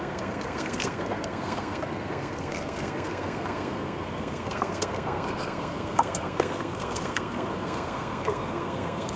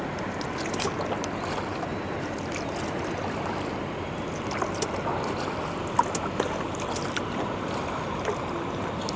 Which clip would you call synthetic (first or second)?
first